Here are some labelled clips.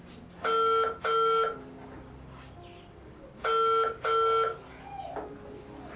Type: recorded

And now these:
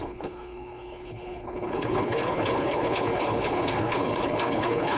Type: remade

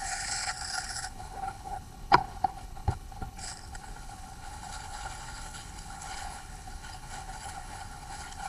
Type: remade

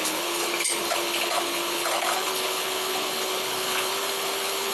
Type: remade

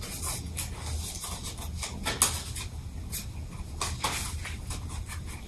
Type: recorded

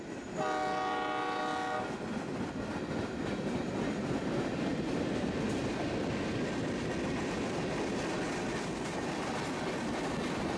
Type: recorded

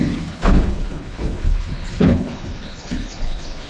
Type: remade